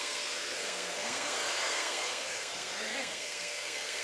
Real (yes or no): no